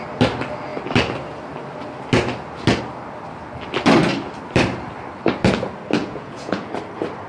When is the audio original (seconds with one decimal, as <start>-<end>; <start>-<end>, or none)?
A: 0.0-6.0; 6.7-7.3